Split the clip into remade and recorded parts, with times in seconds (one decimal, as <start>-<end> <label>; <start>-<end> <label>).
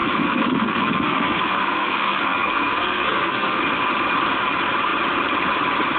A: 0.0-3.6 remade; 3.6-6.0 recorded